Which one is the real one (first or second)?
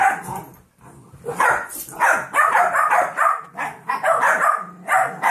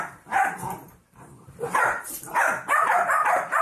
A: first